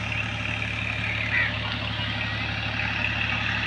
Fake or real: real